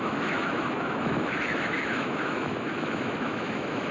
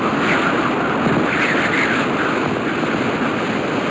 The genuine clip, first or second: second